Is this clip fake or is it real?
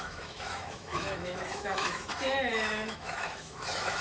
fake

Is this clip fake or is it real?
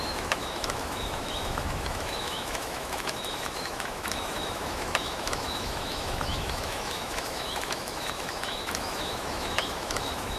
fake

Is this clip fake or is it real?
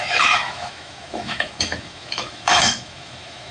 fake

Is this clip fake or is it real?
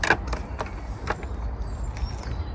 real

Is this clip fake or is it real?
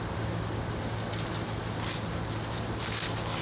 real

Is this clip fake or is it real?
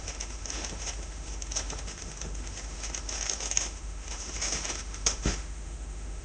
fake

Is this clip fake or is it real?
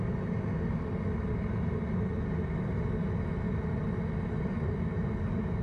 real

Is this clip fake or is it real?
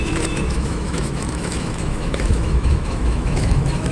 fake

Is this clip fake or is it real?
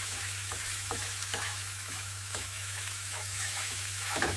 fake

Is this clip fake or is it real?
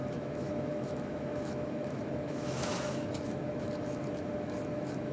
fake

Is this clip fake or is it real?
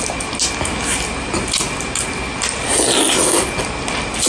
real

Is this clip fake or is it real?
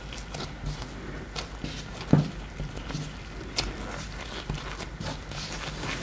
real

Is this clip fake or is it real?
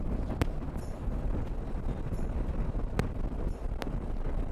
real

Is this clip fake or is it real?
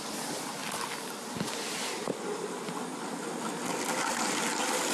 real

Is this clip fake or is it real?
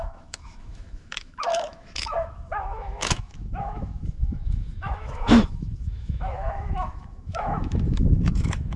fake